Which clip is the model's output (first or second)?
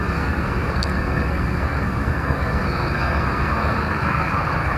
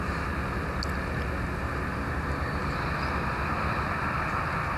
first